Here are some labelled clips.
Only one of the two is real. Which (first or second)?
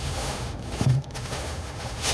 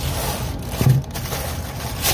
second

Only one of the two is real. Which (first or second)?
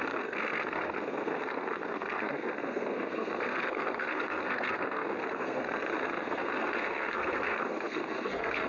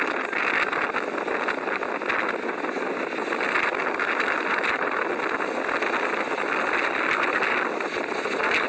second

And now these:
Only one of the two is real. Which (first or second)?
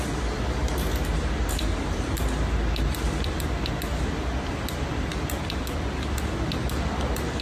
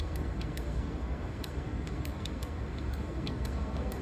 first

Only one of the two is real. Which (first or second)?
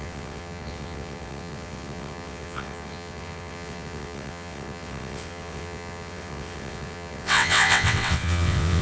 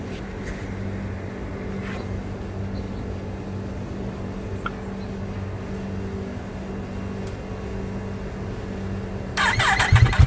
second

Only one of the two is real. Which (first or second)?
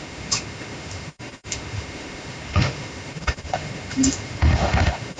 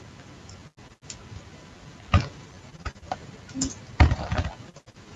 second